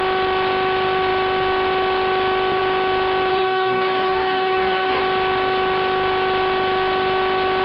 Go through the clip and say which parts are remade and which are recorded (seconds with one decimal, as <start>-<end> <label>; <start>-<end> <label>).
0.0-3.3 recorded; 3.3-5.0 remade; 5.0-7.6 recorded